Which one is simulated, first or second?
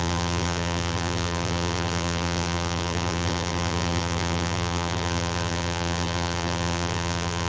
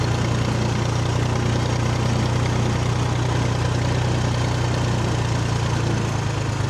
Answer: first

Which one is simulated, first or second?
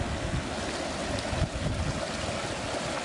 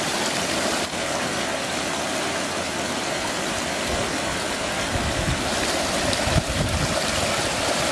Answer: second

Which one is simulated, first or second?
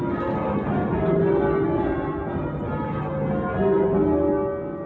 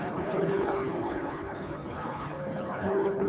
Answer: second